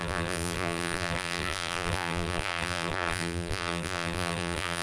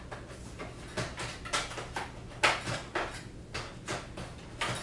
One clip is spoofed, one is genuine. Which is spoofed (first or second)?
first